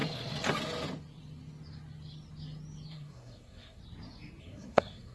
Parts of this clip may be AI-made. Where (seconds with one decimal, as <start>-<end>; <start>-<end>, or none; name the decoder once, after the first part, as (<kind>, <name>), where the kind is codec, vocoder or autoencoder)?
2.9-3.8 (codec, SNAC); 4.4-5.1